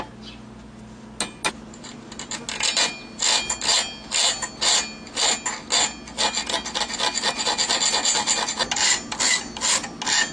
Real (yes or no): yes